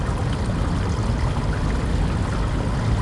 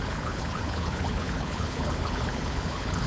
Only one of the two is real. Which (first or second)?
first